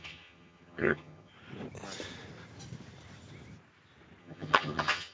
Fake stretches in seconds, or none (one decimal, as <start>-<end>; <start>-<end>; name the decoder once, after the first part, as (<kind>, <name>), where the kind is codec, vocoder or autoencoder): 0.0-1.3 (vocoder, HiFi-GAN); 4.2-5.1